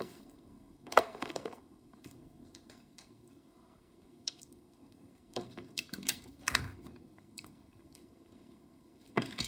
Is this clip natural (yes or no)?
no